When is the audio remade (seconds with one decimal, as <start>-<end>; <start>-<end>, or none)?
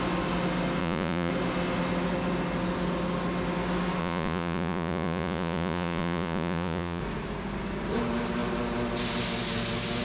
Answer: 0.8-1.3; 4.0-7.0